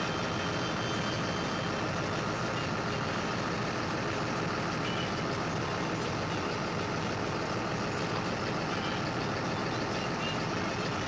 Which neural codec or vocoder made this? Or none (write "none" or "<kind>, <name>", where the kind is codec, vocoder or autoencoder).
none